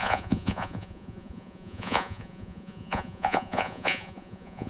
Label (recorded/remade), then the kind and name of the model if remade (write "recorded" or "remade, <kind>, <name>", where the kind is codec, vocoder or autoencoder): remade, vocoder, Vocos